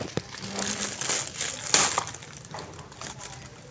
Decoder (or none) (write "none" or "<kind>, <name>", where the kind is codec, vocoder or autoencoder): none